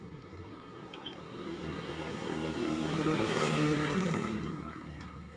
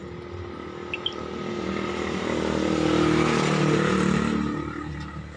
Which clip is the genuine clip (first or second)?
second